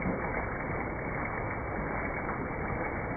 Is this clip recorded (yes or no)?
yes